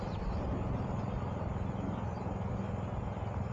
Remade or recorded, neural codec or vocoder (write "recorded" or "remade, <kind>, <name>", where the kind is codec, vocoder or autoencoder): recorded